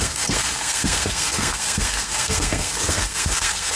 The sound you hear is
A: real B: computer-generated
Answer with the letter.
B